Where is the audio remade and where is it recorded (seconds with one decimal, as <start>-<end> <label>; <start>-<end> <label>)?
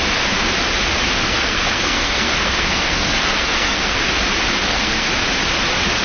0.0-1.2 recorded; 1.2-4.1 remade; 4.1-4.6 recorded; 4.6-5.1 remade; 5.1-6.0 recorded